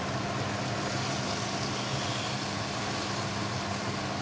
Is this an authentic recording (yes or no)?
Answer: yes